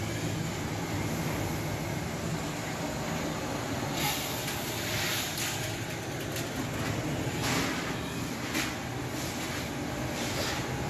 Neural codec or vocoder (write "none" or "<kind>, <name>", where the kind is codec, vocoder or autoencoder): none